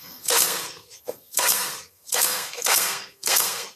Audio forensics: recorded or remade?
remade